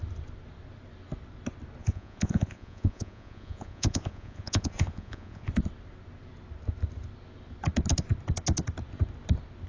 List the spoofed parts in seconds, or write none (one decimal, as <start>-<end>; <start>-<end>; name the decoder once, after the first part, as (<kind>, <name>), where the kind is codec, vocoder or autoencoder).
1.8-5.5 (vocoder, Vocos)